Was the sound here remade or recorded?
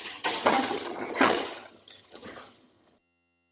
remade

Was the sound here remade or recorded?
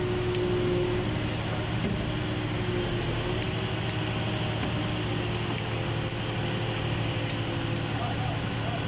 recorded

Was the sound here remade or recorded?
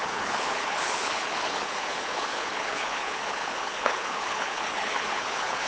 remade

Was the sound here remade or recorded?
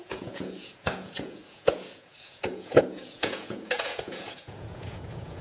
remade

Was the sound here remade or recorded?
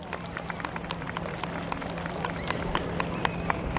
recorded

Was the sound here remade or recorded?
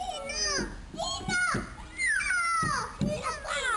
recorded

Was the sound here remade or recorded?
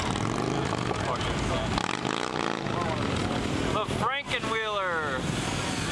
recorded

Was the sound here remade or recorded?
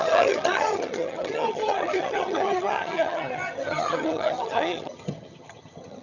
remade